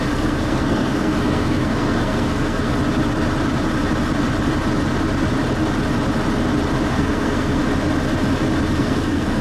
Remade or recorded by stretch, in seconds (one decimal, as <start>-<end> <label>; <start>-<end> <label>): 0.0-2.7 remade; 2.7-6.9 recorded; 6.9-7.6 remade; 7.6-8.8 recorded; 8.8-9.4 remade